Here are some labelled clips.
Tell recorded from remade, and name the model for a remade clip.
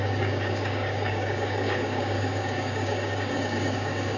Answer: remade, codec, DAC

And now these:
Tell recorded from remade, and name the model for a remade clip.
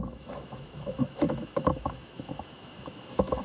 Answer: remade, autoencoder, DAC-VAE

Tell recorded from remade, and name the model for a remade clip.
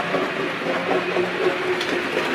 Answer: recorded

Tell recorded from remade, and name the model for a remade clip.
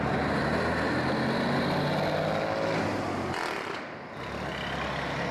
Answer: recorded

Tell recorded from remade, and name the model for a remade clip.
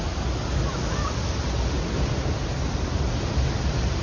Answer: recorded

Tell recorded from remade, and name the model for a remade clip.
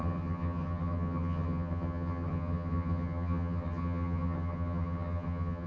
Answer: remade, vocoder, HiFi-GAN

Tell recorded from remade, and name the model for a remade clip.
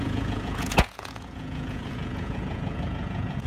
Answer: remade, vocoder, Vocos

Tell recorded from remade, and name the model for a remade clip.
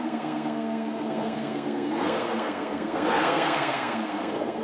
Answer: remade, codec, SNAC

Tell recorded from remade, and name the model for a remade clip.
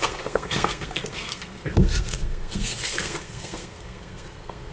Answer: remade, codec, SNAC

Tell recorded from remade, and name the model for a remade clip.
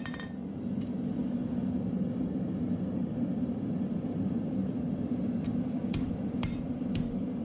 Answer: remade, vocoder, BigVGAN v2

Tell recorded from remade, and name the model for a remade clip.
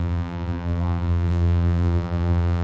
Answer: remade, vocoder, BigVGAN v2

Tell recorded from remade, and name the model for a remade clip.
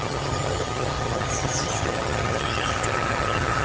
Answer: remade, vocoder, HiFi-GAN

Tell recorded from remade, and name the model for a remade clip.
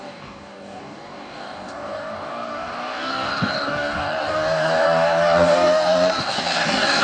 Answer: remade, codec, DAC